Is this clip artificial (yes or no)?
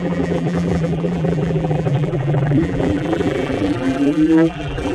yes